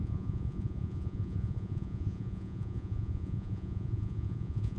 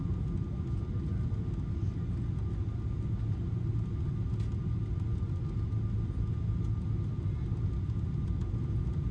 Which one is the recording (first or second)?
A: second